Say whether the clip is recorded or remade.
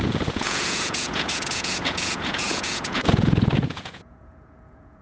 remade